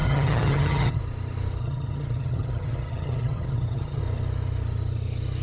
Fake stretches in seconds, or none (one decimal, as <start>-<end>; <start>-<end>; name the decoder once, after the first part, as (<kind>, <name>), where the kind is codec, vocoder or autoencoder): 0.0-1.0 (vocoder, HiFi-GAN); 1.6-4.0